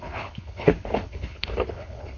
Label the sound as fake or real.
fake